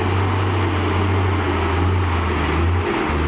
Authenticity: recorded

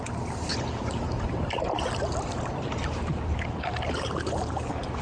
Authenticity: recorded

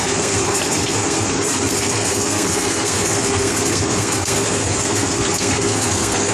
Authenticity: remade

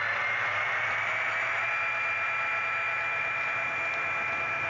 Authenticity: recorded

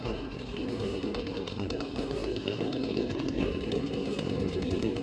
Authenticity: remade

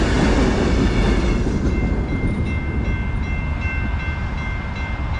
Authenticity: recorded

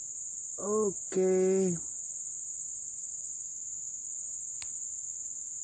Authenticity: recorded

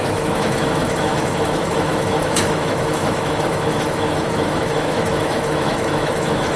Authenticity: remade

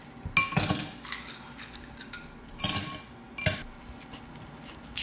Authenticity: recorded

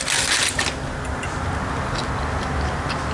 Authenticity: recorded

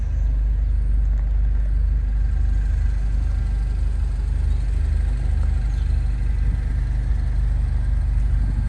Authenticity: recorded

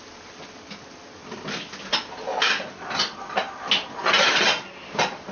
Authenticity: recorded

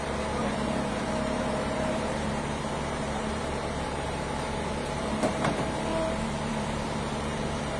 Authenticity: remade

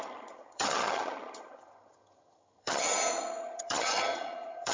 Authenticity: remade